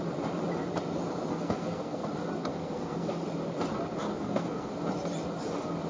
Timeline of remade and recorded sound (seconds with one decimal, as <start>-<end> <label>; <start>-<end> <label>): 0.0-1.3 recorded; 1.3-2.1 remade; 2.1-2.5 recorded; 2.5-3.1 remade; 3.1-4.1 recorded; 4.1-4.7 remade; 4.7-5.9 recorded